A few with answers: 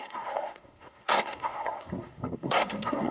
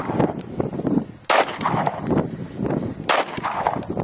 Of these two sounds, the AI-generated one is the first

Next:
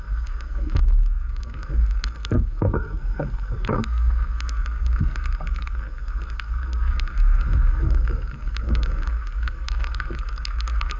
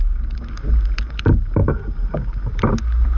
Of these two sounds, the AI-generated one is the first